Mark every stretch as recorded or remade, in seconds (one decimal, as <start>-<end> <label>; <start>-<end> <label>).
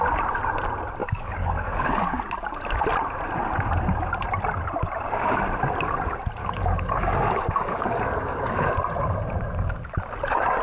0.0-1.0 recorded; 1.0-2.2 remade; 2.2-6.4 recorded; 6.4-8.7 remade; 8.7-10.6 recorded